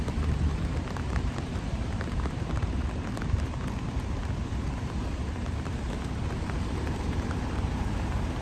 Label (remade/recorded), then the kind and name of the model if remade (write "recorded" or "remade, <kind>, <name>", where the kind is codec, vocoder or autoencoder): remade, vocoder, BigVGAN v2